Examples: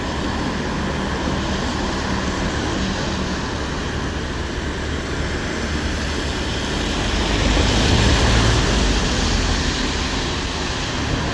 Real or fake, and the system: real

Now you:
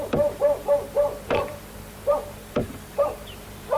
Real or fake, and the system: fake, vocoder, BigVGAN v2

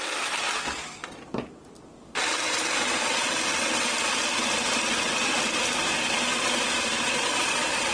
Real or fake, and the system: real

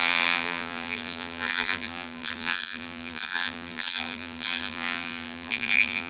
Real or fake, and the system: fake, vocoder, BigVGAN v2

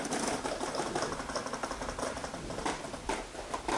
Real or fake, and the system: real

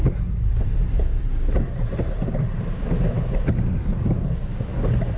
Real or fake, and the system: real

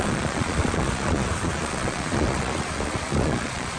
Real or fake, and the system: fake, vocoder, Vocos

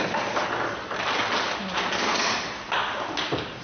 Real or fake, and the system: real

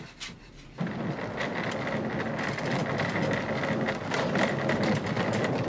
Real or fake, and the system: real